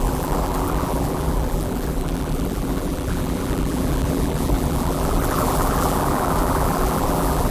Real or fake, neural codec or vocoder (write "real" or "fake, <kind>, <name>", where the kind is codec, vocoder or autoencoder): fake, vocoder, BigVGAN v2